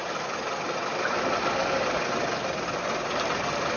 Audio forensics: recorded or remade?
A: recorded